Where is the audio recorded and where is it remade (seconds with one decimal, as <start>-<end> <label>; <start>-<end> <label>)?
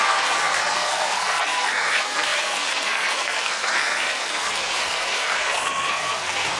0.0-6.6 remade